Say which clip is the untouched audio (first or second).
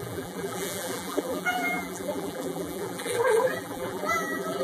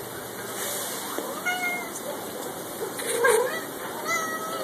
second